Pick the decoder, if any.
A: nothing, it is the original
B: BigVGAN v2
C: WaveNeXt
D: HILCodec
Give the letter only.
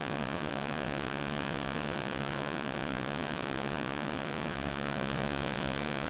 C